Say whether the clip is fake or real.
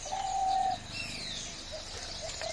real